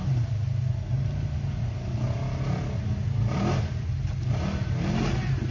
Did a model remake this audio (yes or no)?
no